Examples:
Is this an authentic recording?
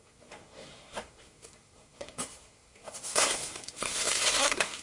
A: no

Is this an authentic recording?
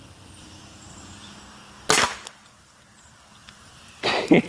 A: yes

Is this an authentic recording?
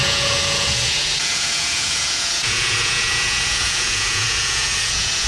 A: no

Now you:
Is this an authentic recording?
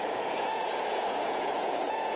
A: no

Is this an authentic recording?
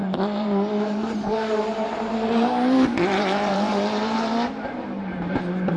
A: no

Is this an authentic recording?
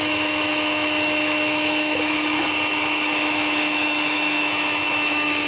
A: no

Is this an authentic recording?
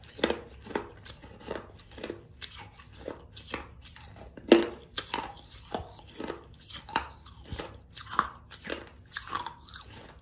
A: yes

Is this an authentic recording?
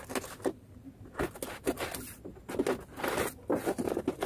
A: yes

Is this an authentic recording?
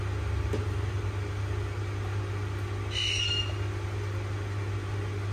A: yes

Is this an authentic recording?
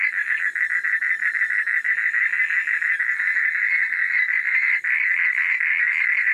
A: yes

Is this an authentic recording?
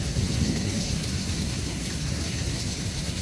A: no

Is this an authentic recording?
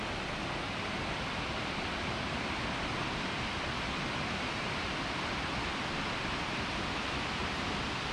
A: yes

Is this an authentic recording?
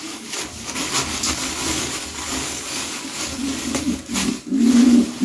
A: no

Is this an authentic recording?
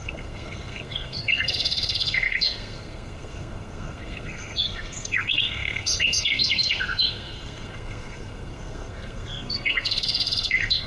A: no